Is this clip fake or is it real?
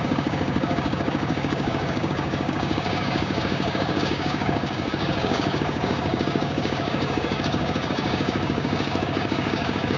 fake